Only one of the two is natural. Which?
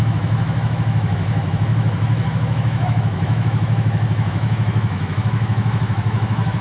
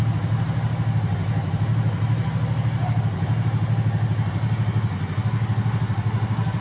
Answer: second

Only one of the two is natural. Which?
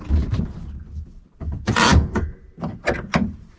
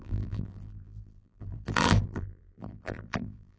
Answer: first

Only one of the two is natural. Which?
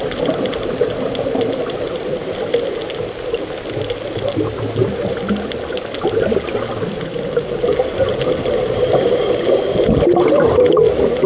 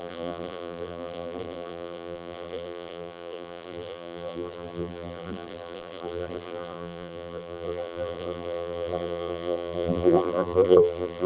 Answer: first